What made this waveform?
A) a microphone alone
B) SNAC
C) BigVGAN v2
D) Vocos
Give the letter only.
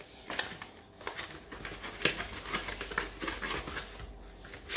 A